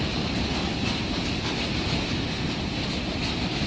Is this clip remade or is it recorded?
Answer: recorded